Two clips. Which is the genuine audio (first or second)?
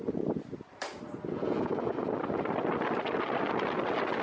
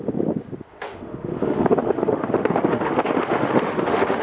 first